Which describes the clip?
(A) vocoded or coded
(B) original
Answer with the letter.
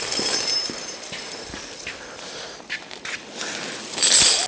B